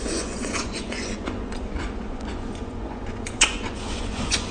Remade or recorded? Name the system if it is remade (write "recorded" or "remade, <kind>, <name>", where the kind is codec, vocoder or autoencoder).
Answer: remade, vocoder, Vocos